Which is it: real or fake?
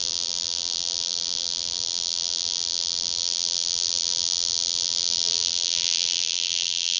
fake